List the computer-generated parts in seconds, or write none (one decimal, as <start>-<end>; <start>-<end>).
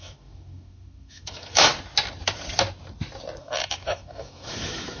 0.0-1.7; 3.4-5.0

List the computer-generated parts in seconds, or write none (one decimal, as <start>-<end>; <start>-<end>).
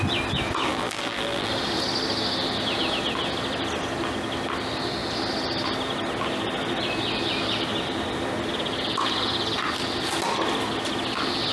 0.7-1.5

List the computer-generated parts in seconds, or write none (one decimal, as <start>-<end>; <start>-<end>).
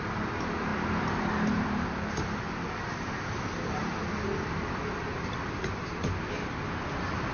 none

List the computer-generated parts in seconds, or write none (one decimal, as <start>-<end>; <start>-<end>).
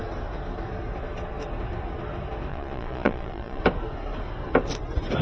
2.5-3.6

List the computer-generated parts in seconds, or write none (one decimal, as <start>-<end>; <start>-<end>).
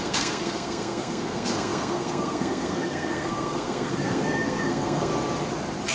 0.0-5.1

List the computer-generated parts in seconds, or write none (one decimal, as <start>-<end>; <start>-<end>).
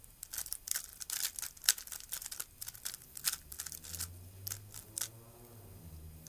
none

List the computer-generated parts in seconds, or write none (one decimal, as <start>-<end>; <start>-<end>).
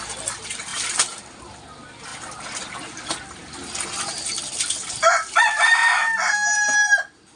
none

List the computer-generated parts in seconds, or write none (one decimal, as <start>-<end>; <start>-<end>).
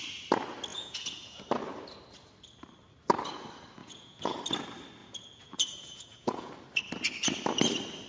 0.7-1.4; 3.8-4.4; 5.0-6.5